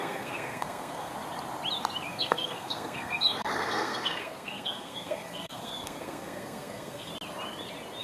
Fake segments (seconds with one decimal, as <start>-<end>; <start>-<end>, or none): 0.0-1.1; 2.1-7.1